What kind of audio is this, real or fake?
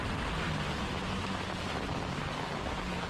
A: real